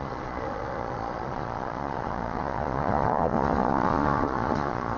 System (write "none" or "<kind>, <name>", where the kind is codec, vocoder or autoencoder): vocoder, Vocos